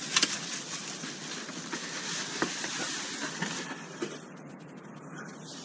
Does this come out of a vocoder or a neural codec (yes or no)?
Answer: no